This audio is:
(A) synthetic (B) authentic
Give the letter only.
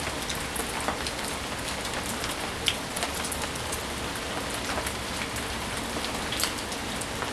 B